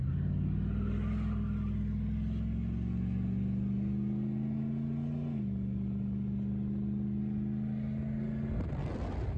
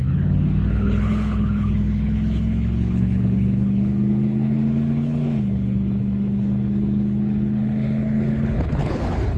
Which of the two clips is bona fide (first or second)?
first